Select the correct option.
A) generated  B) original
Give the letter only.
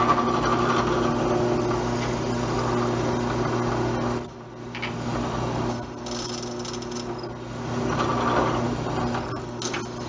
B